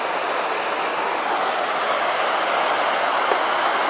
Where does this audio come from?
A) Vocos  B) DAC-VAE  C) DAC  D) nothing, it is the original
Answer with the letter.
D